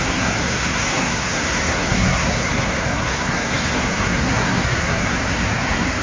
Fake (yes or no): yes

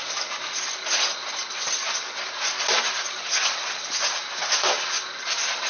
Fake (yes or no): no